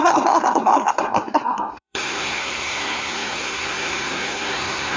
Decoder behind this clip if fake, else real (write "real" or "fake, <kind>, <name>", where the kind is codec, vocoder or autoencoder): fake, codec, SNAC